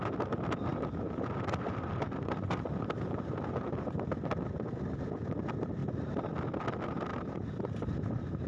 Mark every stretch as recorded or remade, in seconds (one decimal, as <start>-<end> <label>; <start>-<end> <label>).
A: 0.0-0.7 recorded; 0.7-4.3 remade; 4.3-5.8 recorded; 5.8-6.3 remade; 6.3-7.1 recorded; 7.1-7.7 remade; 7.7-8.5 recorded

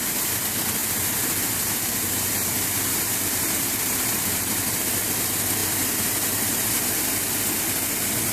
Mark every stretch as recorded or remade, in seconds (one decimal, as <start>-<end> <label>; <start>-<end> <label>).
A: 0.0-0.8 recorded; 0.8-4.4 remade; 4.4-5.6 recorded; 5.6-6.7 remade; 6.7-8.3 recorded

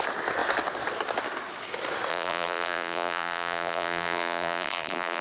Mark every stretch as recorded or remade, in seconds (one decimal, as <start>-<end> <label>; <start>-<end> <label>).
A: 0.0-2.1 recorded; 2.1-5.2 remade